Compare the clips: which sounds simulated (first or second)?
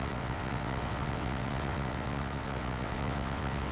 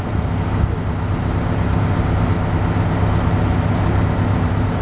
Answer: first